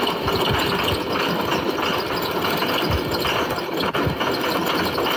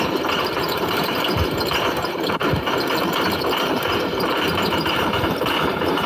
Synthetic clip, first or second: second